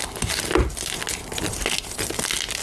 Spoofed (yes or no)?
no